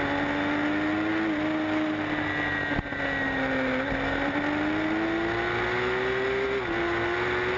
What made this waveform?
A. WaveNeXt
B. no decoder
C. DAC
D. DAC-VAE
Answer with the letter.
B